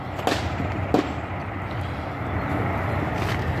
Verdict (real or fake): real